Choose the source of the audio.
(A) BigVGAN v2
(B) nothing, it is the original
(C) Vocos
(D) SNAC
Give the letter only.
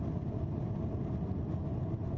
B